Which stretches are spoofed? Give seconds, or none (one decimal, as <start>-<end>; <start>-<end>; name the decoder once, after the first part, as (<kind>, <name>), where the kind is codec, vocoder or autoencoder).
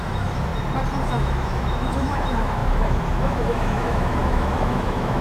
0.0-0.5 (autoencoder, DAC-VAE); 1.1-5.2